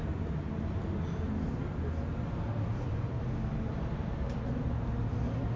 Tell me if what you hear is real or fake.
real